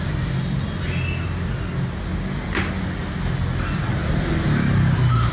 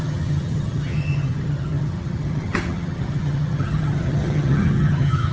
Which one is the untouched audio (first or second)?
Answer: first